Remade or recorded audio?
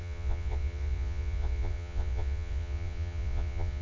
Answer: remade